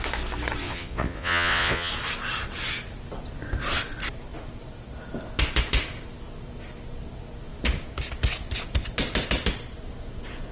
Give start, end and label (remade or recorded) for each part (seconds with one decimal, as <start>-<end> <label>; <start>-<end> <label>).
0.0-0.6 recorded; 0.6-1.9 remade; 1.9-10.5 recorded